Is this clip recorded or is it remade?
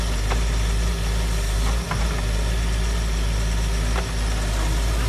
recorded